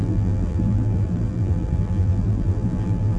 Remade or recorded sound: remade